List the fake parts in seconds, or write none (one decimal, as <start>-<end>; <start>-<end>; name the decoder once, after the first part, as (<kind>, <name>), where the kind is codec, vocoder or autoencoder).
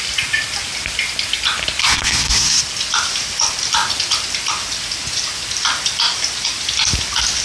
1.8-2.6 (codec, SNAC)